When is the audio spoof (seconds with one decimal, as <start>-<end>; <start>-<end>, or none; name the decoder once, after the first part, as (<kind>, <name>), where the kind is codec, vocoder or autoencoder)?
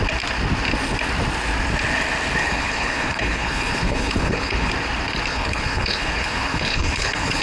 2.4-4.7 (codec, HILCodec); 5.3-7.4